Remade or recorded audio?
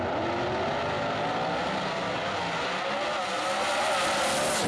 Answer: recorded